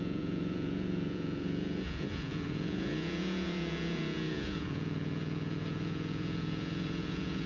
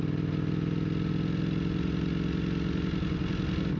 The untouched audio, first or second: second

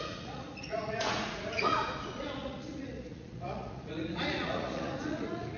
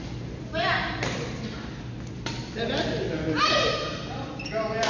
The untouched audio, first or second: second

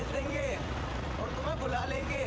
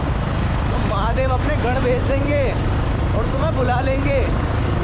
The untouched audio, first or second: second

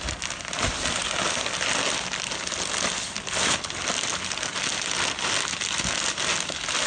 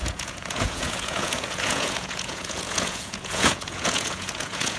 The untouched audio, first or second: first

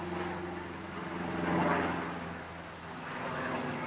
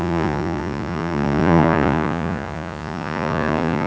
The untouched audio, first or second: first